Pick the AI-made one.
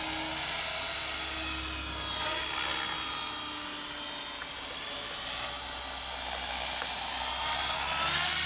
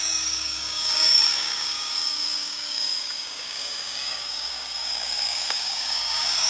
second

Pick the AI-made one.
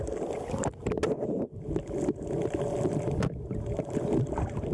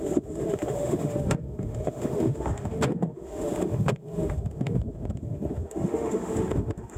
second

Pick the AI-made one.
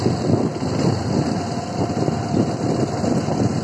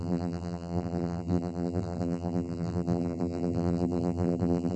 second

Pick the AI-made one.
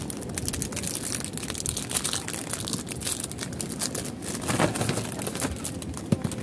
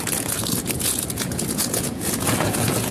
second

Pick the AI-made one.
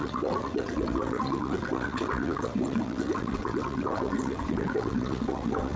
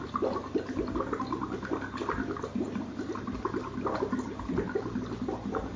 first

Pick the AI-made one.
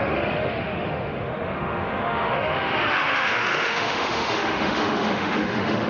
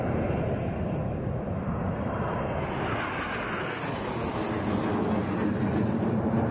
first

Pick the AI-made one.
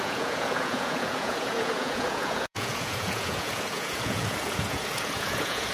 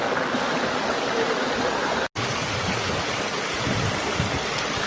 first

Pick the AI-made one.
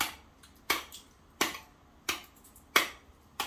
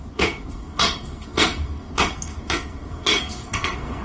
second